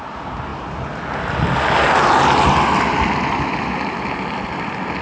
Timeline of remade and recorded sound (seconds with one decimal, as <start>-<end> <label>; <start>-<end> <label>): 0.0-5.0 recorded